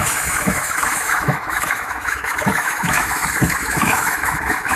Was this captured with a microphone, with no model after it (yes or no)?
no